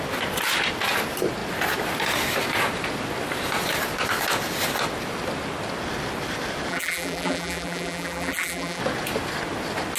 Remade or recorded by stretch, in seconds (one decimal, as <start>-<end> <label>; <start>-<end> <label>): 0.0-6.7 recorded; 6.7-8.8 remade; 8.8-10.0 recorded